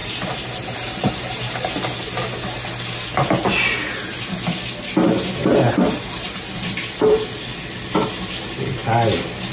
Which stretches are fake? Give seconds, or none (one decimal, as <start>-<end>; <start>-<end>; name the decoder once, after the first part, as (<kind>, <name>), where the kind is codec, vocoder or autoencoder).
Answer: 0.0-1.5 (vocoder, BigVGAN v2); 5.4-6.8